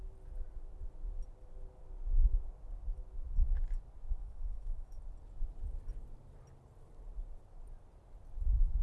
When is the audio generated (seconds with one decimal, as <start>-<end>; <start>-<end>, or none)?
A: 4.2-5.0

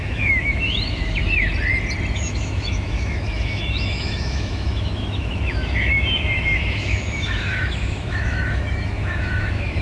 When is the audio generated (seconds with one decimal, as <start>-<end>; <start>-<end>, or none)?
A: 0.0-1.2; 2.1-9.8

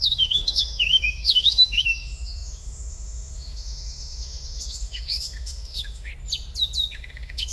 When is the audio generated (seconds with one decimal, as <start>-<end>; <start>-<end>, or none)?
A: 0.0-6.1; 6.9-7.5

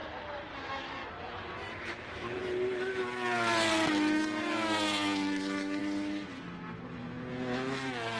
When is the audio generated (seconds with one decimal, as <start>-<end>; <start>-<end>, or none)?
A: 0.6-1.0; 1.8-2.4; 3.9-5.8; 7.3-8.2

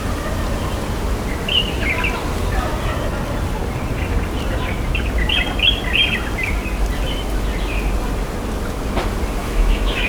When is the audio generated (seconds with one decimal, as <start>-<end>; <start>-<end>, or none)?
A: 9.4-10.1

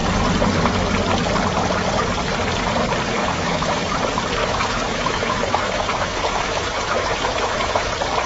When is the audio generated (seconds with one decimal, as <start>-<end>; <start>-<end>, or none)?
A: 3.2-4.0; 4.4-7.9

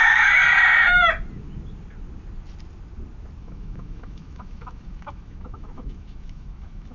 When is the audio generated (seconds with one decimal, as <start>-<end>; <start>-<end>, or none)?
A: 0.0-0.4; 3.4-6.9

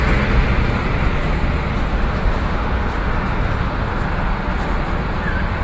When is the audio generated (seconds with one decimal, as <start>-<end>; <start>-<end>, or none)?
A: 1.7-3.7